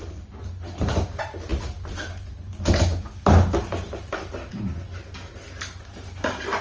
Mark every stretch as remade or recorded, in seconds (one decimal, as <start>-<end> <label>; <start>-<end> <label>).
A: 0.0-6.6 recorded